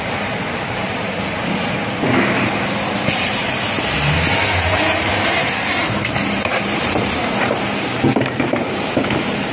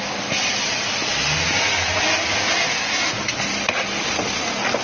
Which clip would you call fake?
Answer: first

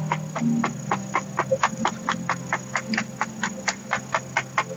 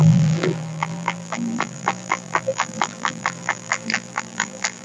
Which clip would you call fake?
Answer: second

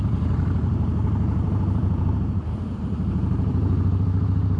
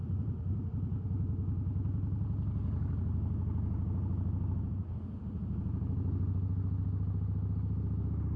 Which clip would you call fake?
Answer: first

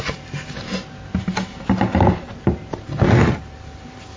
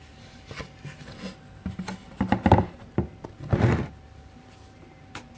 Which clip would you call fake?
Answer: second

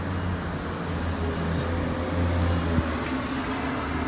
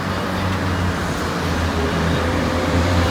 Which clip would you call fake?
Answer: second